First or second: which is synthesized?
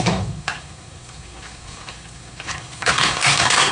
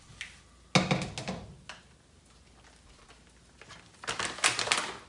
first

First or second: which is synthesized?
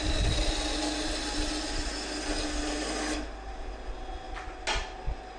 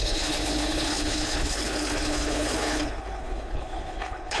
second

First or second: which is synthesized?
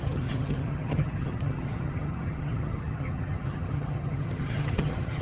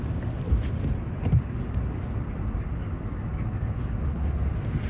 first